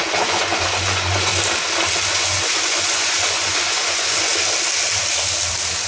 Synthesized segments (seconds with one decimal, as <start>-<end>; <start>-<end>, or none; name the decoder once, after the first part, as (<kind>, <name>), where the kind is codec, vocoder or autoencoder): 0.0-1.3 (vocoder, Vocos); 2.1-4.3